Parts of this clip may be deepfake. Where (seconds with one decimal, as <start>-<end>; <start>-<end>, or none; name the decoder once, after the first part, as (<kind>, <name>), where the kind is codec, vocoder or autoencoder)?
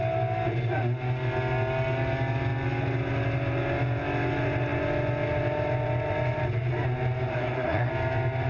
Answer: 7.3-7.9 (codec, SNAC)